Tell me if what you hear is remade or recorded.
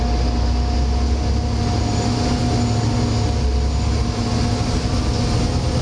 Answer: recorded